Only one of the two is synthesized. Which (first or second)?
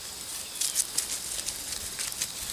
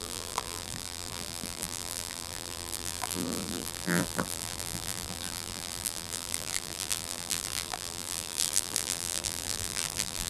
second